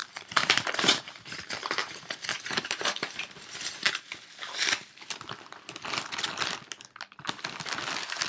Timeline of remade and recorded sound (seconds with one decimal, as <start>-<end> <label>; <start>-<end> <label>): 0.0-3.9 remade; 3.9-8.3 recorded